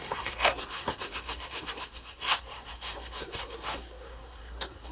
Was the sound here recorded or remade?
remade